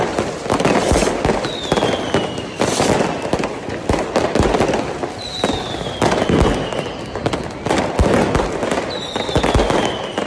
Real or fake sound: real